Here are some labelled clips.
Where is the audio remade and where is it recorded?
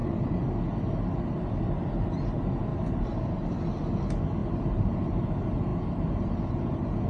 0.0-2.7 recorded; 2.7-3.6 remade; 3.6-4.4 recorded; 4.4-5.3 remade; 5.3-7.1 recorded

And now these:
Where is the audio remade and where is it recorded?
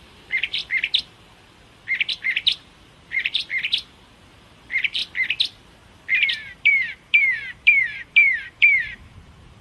0.0-0.6 remade; 0.6-2.1 recorded; 2.1-3.4 remade; 3.4-4.0 recorded; 4.0-5.0 remade; 5.0-6.3 recorded; 6.3-9.6 remade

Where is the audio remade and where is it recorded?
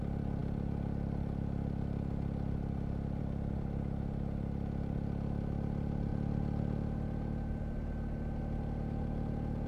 0.0-9.7 recorded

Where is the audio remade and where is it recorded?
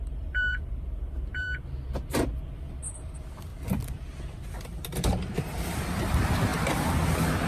0.0-7.5 remade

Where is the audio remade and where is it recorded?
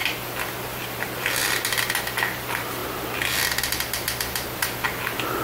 0.0-2.8 remade; 2.8-3.6 recorded; 3.6-5.4 remade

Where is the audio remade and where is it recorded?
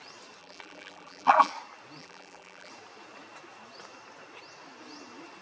0.0-0.4 recorded; 0.4-1.5 remade; 1.5-2.0 recorded; 2.0-2.7 remade; 2.7-5.4 recorded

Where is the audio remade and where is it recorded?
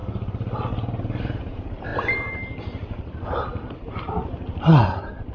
0.0-0.7 recorded; 0.7-5.3 remade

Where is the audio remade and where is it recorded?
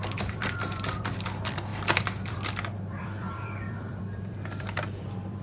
0.0-5.4 remade